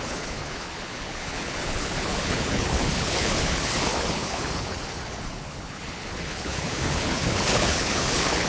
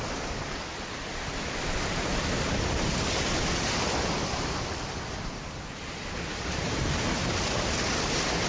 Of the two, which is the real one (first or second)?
second